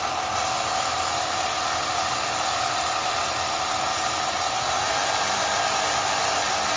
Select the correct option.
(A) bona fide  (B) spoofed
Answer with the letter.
A